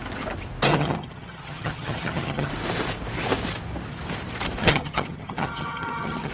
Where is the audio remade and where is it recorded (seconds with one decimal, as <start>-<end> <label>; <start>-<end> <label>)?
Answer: 0.0-0.7 recorded; 0.7-2.5 remade; 2.5-4.6 recorded; 4.6-6.3 remade